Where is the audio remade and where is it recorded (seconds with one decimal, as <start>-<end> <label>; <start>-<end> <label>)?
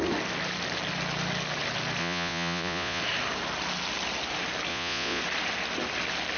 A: 0.0-2.0 recorded; 2.0-3.0 remade; 3.0-4.7 recorded; 4.7-5.2 remade; 5.2-6.4 recorded